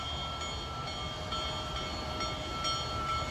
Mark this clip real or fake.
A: real